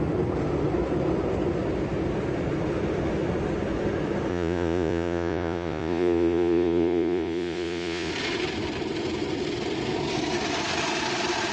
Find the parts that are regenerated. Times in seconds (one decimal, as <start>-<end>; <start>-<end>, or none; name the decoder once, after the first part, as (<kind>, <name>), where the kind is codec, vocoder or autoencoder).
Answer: 4.3-8.1 (vocoder, Vocos)

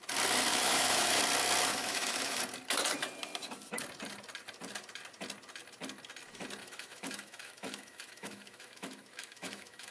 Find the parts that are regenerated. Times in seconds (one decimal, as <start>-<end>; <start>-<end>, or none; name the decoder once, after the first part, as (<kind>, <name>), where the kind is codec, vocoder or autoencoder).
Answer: 0.5-1.2 (autoencoder, DAC-VAE); 1.7-2.4; 6.6-9.9

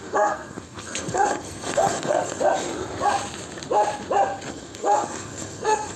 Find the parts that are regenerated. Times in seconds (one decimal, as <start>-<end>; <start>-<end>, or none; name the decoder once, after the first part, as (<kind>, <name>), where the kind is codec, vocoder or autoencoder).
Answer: 0.0-2.4 (codec, SNAC); 4.5-6.0